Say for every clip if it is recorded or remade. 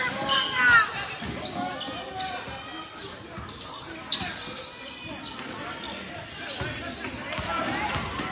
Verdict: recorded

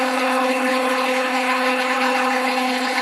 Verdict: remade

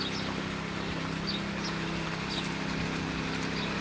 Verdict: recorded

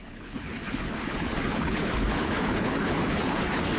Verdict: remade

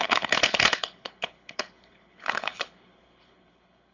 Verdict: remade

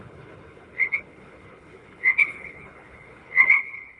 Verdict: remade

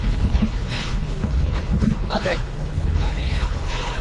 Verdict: remade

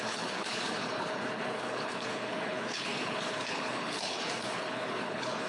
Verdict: remade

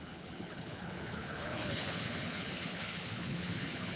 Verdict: remade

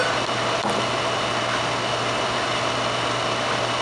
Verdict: recorded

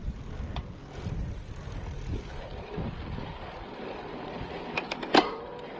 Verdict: recorded